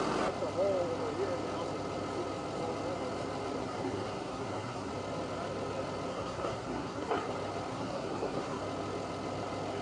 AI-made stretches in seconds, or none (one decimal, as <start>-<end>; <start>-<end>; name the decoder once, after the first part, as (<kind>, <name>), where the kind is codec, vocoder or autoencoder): 3.6-4.9 (codec, SNAC); 6.1-7.3; 7.7-8.6